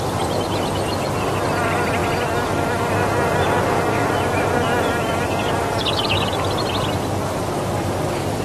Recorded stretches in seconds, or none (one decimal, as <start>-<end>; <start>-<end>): 0.0-2.0; 7.0-8.4